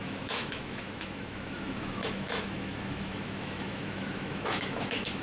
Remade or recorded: remade